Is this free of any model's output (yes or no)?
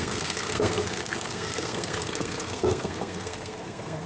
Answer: no